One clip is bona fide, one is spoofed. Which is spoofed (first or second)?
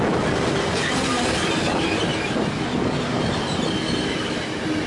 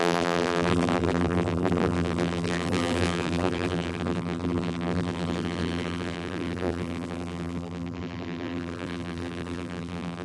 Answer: second